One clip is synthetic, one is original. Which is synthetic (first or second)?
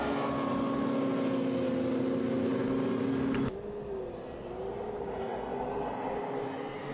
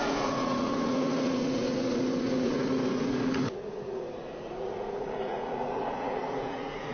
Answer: second